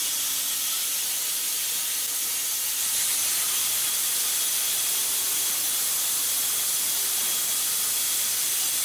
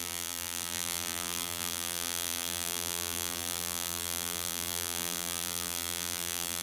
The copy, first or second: second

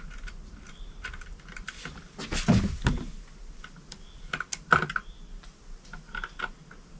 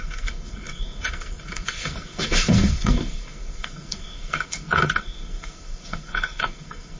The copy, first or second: second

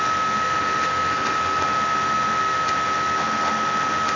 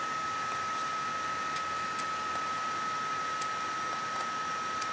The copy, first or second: first